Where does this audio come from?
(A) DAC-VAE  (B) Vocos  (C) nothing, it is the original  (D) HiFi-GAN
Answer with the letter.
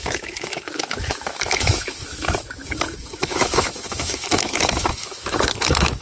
A